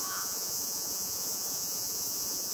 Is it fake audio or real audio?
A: fake